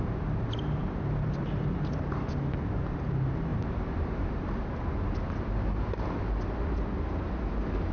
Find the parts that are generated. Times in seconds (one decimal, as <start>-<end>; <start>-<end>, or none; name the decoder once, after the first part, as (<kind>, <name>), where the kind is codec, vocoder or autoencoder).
0.8-2.0 (vocoder, BigVGAN v2); 3.5-4.3

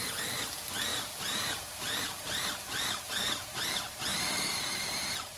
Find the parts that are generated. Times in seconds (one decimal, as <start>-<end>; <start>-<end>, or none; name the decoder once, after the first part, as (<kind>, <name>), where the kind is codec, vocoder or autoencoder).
0.9-3.1 (vocoder, BigVGAN v2); 4.1-5.4

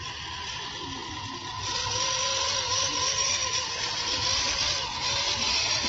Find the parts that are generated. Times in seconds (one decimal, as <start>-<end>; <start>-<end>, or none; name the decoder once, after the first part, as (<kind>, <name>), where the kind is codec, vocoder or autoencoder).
none

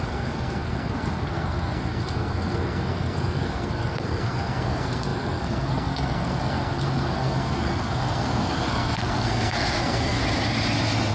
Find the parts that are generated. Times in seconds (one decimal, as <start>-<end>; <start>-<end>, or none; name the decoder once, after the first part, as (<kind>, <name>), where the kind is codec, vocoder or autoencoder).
0.0-10.2 (codec, SNAC)